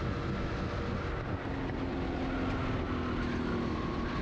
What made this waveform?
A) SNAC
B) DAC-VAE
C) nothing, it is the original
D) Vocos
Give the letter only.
C